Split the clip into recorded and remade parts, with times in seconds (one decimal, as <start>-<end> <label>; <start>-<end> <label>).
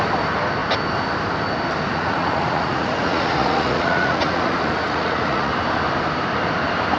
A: 0.0-1.9 recorded; 1.9-5.5 remade; 5.5-7.0 recorded